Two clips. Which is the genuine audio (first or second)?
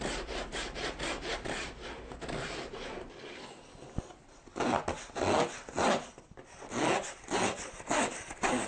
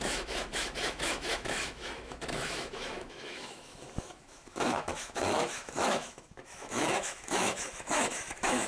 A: first